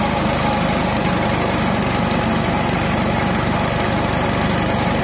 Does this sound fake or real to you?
real